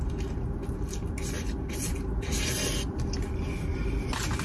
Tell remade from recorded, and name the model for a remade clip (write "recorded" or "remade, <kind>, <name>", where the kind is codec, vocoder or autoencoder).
recorded